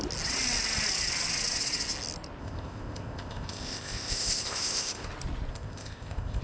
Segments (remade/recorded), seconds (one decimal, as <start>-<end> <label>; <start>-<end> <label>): 0.0-2.4 recorded; 2.4-5.1 remade; 5.1-5.5 recorded; 5.5-6.4 remade